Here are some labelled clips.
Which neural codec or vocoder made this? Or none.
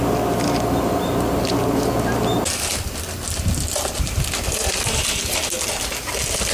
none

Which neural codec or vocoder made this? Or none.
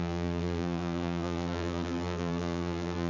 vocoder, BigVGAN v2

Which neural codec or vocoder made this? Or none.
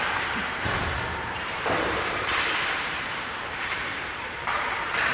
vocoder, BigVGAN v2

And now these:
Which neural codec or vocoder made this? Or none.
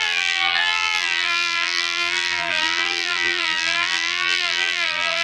vocoder, BigVGAN v2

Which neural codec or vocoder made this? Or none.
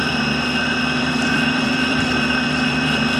vocoder, BigVGAN v2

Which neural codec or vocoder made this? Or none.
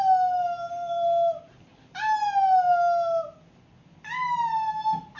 none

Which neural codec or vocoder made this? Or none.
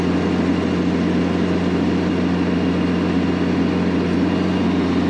none